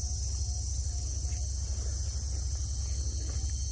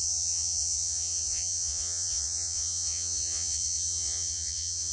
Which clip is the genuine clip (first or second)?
first